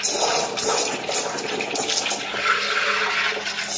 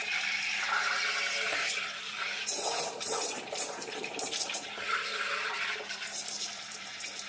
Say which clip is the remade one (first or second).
second